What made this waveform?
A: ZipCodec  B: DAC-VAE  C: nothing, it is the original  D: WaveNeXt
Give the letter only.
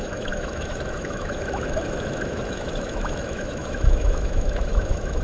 B